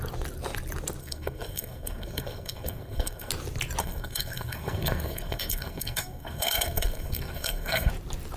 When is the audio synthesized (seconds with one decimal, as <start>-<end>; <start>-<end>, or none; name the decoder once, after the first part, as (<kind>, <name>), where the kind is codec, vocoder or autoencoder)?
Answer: 1.0-3.3 (codec, SNAC); 3.8-7.9

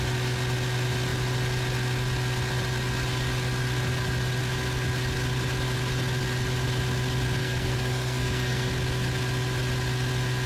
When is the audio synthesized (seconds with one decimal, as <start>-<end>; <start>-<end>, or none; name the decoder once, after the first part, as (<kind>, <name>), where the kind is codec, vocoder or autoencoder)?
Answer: 7.4-8.7 (codec, SNAC)

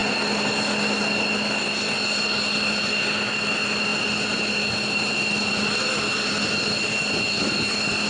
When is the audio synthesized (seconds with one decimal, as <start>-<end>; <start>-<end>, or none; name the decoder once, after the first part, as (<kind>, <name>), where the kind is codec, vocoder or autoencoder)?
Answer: none

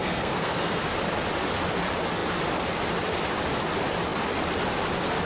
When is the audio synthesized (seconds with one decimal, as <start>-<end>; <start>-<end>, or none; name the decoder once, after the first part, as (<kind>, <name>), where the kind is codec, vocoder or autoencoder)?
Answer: 0.0-0.8 (codec, SNAC)

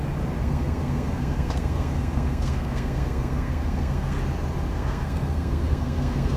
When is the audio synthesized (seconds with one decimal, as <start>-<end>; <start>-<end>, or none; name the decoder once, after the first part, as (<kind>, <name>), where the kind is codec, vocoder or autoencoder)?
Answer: 0.4-4.2 (codec, SNAC); 4.7-6.4

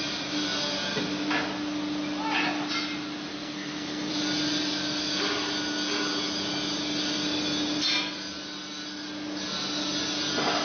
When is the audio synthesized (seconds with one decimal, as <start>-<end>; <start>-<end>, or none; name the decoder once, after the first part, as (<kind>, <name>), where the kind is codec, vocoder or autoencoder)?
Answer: 3.3-4.1 (codec, SNAC)

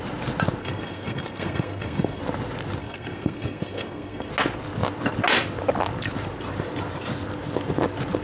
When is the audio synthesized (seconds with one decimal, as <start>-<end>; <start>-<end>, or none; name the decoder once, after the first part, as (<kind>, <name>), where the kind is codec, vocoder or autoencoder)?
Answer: 0.6-2.2 (codec, SNAC); 2.8-4.3